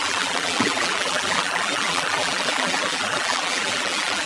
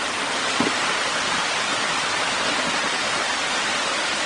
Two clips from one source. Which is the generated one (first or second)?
first